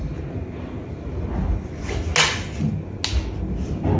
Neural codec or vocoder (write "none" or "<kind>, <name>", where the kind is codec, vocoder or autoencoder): none